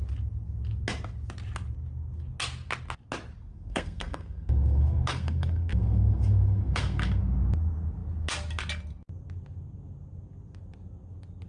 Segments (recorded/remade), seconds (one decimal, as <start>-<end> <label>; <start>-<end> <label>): 0.0-3.5 recorded; 3.5-7.2 remade; 7.2-11.5 recorded